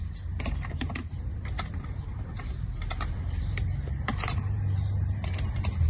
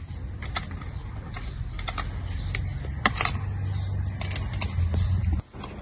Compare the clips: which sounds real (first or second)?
second